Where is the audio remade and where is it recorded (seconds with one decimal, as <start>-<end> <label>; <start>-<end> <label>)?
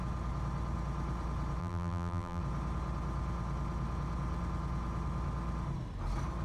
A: 0.0-1.6 recorded; 1.6-2.4 remade; 2.4-6.4 recorded